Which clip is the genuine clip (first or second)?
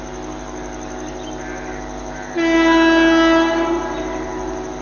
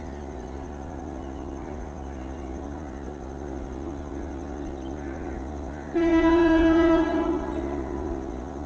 first